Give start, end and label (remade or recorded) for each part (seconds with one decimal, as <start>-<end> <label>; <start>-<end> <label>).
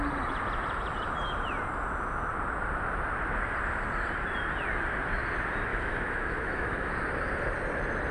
0.0-5.7 recorded; 5.7-6.9 remade; 6.9-8.1 recorded